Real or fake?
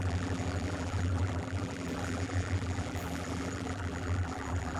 fake